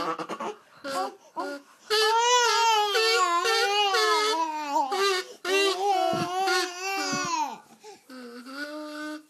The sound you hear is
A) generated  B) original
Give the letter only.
B